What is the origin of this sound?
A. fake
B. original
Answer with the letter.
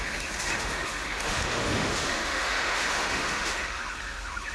A